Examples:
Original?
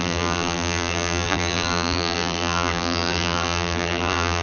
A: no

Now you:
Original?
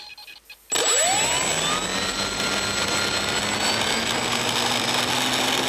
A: yes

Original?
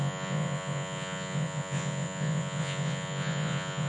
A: no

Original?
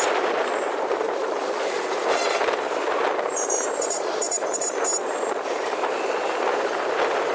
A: no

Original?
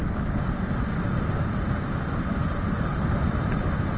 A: yes